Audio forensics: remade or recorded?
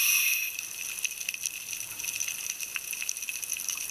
recorded